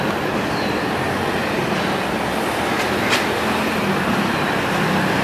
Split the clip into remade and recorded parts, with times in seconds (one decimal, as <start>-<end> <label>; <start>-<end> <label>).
0.0-5.2 recorded